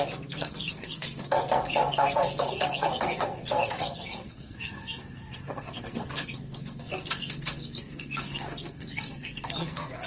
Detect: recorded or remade remade